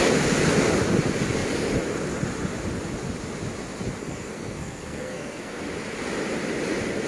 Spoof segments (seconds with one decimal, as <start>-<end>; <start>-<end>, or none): 4.0-5.6